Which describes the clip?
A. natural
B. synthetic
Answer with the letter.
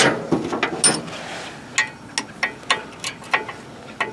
A